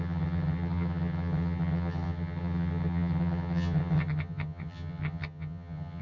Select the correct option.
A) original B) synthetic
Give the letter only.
B